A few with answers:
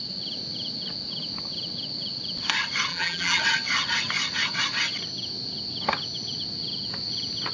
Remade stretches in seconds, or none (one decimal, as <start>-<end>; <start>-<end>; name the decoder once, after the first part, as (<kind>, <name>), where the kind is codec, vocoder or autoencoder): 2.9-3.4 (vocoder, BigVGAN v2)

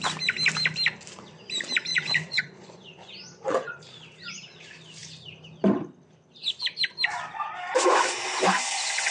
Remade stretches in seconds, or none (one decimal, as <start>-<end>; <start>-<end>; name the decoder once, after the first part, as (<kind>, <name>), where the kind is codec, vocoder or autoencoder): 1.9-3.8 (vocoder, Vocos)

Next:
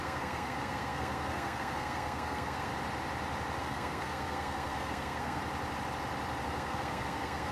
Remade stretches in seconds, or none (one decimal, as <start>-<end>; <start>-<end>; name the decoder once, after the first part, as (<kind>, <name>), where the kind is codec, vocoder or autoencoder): 0.0-2.7 (codec, SNAC); 3.6-5.4; 6.4-7.5

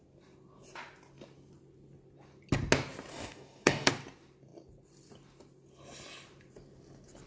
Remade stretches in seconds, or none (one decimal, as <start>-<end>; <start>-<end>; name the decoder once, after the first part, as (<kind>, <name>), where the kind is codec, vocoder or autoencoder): 3.1-3.9 (codec, DAC)